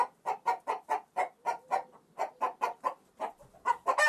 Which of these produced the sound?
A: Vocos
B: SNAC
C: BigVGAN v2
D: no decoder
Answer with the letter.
D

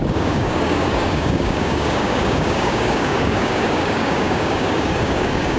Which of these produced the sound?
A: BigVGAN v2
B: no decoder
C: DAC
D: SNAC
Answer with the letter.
C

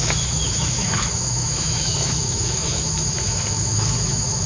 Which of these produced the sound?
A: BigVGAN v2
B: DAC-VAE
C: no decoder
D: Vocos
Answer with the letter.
B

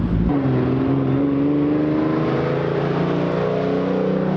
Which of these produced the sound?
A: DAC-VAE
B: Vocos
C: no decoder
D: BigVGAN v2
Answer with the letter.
C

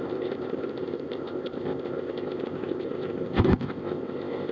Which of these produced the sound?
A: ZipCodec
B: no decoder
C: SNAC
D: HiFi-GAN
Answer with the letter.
A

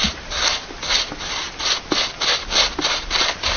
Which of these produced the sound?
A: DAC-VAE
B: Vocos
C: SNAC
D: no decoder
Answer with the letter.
D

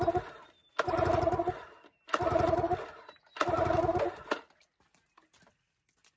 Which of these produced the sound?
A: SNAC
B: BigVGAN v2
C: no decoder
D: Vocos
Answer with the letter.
C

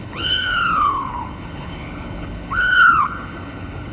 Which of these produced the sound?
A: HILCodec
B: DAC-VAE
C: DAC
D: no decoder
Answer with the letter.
A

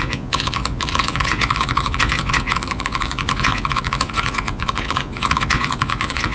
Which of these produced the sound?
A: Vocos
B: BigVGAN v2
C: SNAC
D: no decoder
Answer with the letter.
A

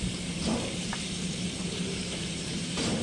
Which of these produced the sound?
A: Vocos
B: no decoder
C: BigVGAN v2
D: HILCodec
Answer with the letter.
C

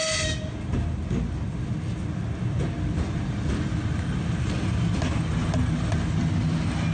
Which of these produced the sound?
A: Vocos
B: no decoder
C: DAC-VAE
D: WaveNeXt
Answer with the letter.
B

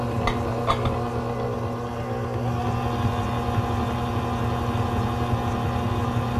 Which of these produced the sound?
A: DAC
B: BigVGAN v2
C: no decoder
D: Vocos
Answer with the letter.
C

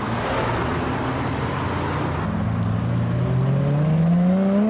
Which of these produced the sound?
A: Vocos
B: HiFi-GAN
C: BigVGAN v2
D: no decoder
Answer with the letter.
D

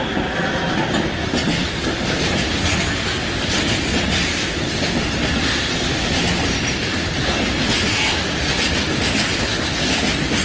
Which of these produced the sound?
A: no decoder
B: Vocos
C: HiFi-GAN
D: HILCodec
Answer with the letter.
A